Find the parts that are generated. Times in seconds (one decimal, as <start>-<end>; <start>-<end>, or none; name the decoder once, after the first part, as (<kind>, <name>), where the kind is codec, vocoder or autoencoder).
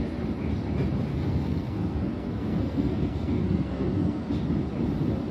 1.1-4.3 (codec, SNAC)